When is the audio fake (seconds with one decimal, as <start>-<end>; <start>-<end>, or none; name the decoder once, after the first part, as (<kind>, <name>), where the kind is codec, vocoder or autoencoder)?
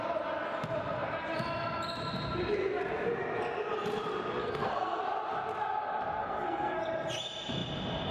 4.4-5.0 (codec, SNAC); 6.2-6.8